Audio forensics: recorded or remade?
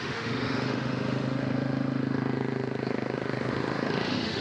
remade